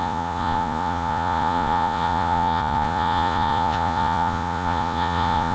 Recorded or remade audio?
remade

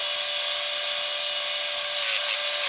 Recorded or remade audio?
recorded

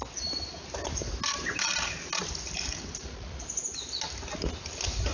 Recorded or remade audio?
recorded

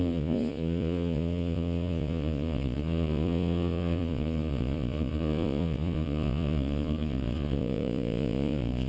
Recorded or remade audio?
remade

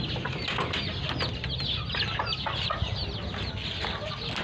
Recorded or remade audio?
recorded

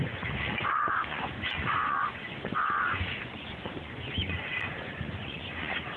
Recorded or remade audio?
remade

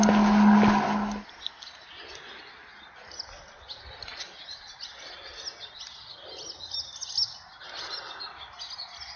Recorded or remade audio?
recorded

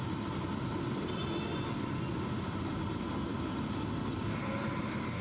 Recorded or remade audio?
recorded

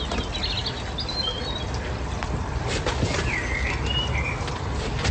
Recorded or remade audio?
recorded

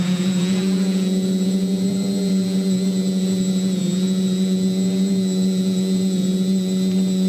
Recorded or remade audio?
remade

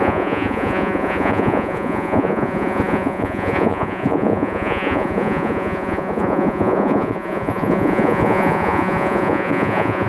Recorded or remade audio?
remade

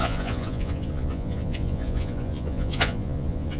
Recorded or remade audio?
remade